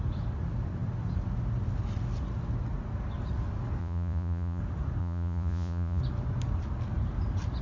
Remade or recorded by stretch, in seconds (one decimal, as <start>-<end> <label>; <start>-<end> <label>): 0.0-3.8 recorded; 3.8-4.6 remade; 4.6-5.0 recorded; 5.0-6.0 remade; 6.0-7.6 recorded